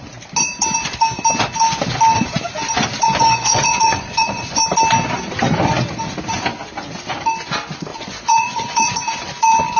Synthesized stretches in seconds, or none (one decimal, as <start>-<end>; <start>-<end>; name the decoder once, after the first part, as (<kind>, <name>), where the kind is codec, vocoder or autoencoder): 3.0-4.6 (vocoder, Vocos); 7.9-8.9